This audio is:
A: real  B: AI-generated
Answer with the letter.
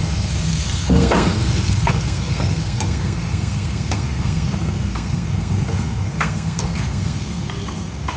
B